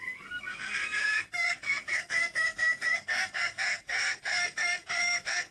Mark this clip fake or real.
fake